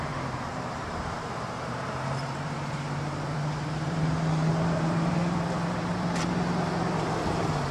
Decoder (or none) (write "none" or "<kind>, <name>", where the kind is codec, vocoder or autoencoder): vocoder, BigVGAN v2